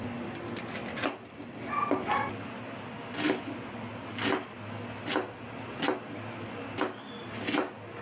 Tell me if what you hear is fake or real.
real